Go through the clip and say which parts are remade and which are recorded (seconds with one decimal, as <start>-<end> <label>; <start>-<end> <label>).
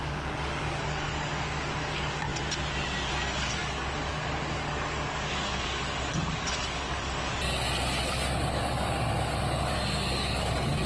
0.0-2.3 remade; 2.3-3.2 recorded; 3.2-7.3 remade; 7.3-8.1 recorded; 8.1-10.9 remade